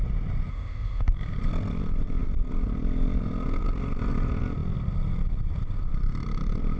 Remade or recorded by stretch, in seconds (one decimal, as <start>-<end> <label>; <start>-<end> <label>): 0.0-0.5 recorded; 0.5-1.1 remade; 1.1-6.8 recorded